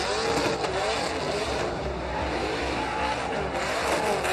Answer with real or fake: real